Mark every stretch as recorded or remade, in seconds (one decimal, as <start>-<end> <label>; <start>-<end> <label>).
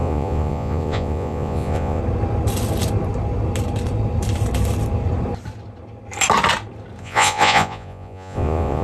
0.0-2.0 remade; 2.0-7.0 recorded; 7.0-8.8 remade